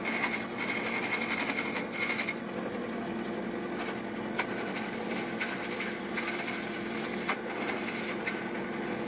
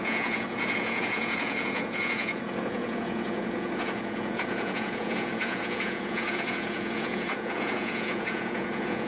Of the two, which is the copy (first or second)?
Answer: second